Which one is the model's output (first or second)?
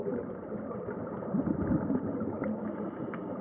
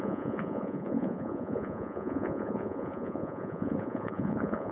second